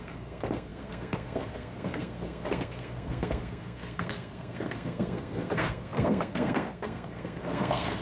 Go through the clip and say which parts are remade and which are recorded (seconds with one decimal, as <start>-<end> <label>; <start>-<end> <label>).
0.0-8.0 remade